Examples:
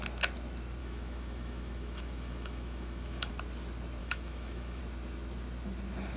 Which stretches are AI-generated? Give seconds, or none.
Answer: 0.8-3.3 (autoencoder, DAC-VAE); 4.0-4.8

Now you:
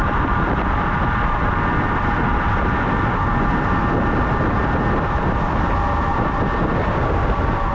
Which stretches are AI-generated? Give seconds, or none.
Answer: none